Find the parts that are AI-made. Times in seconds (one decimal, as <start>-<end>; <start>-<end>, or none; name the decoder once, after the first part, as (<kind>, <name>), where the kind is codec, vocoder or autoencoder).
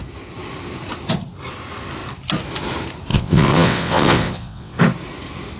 3.1-4.8 (vocoder, WaveNeXt)